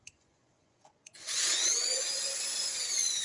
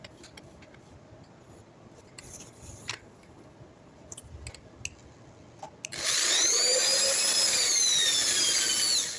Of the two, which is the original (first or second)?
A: second